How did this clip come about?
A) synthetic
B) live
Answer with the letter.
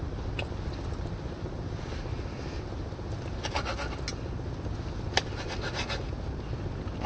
B